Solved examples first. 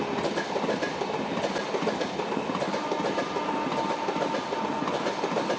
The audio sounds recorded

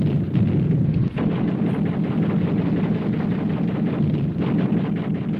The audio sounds recorded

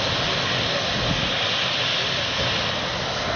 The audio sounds recorded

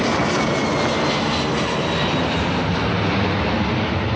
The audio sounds recorded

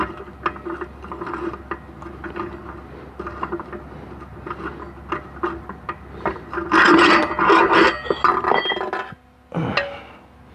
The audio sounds recorded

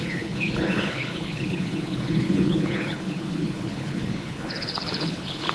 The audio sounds remade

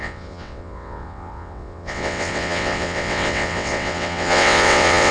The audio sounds remade